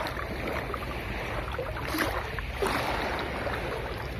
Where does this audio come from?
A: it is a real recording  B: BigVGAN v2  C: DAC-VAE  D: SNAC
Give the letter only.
A